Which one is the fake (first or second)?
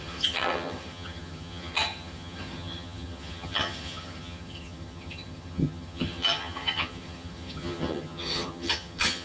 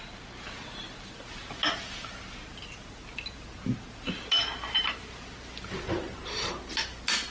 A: first